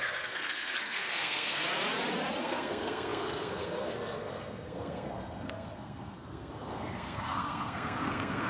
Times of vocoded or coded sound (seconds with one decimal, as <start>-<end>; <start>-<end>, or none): 0.0-1.6; 2.4-8.5